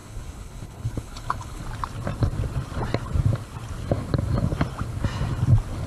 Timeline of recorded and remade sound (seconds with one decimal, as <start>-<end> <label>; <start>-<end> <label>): 0.0-1.6 remade; 1.6-5.9 recorded